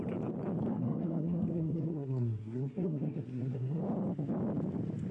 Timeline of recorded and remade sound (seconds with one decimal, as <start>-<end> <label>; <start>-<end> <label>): 0.0-0.7 recorded; 0.7-3.8 remade; 3.8-5.1 recorded